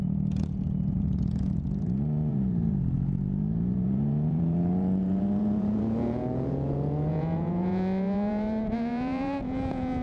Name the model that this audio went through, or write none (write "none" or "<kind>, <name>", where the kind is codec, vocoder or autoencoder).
vocoder, Vocos